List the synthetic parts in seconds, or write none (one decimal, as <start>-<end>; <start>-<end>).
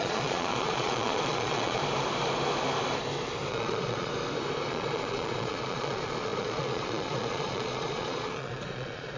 0.0-1.8; 3.5-4.1; 4.7-9.2